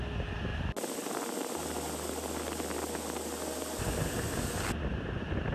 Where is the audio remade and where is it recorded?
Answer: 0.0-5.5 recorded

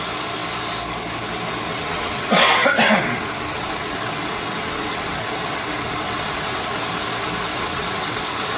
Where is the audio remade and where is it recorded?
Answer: 0.0-1.7 recorded; 1.7-6.9 remade; 6.9-7.5 recorded; 7.5-8.6 remade

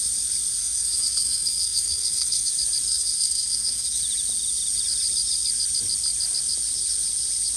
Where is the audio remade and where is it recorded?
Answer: 0.0-0.6 recorded; 0.6-2.5 remade; 2.5-2.9 recorded; 2.9-4.0 remade; 4.0-7.6 recorded

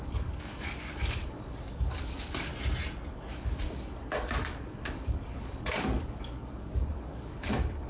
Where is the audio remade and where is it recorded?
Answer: 0.0-2.5 remade; 2.5-3.1 recorded; 3.1-7.9 remade

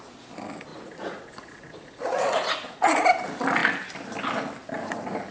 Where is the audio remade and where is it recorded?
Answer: 0.0-0.7 recorded; 0.7-3.0 remade; 3.0-5.3 recorded

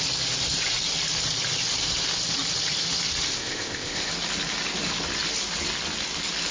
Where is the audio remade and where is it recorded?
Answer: 0.0-3.3 recorded; 3.3-4.1 remade; 4.1-6.5 recorded